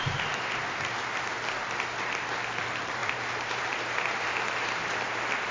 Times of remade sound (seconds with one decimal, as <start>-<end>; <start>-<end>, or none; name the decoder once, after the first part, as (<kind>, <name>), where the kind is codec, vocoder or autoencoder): none